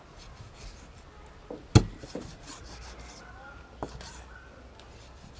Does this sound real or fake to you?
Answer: real